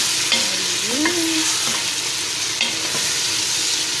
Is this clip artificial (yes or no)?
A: no